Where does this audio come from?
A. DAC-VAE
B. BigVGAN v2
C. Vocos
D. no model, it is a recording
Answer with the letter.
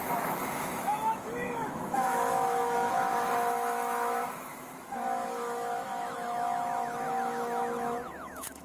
A